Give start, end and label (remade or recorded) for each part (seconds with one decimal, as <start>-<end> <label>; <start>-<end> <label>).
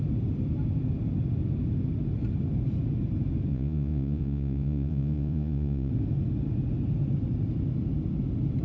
0.0-3.5 recorded; 3.5-5.9 remade; 5.9-8.6 recorded